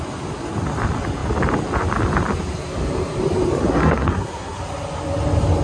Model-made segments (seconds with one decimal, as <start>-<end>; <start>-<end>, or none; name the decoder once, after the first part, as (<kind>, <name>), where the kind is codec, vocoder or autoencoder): 3.7-4.6 (codec, SNAC)